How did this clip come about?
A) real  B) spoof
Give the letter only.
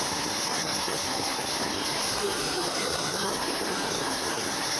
B